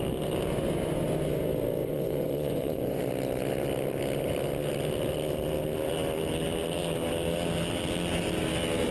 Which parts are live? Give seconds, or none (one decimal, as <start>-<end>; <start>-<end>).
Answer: 0.0-1.8; 3.0-8.9

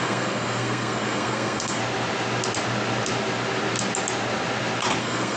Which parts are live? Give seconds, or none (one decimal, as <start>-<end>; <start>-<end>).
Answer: 1.8-5.0

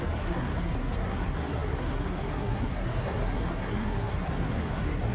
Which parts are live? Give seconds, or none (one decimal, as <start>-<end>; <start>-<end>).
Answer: none

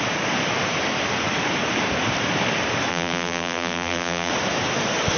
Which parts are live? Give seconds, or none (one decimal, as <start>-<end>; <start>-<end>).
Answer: 0.0-2.9; 4.3-5.2

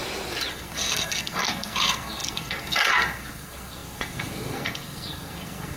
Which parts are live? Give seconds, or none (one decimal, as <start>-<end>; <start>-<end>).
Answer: 0.0-0.5

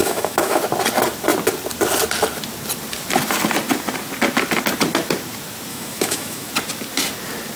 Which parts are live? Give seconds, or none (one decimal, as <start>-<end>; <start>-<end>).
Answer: 0.6-5.7; 6.5-7.6

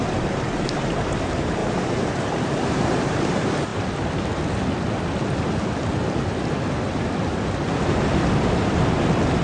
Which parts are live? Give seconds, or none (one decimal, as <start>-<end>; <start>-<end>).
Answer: 3.7-8.3

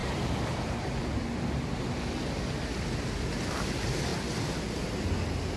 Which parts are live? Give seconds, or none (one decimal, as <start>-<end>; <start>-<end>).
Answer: 1.8-4.1; 4.9-5.6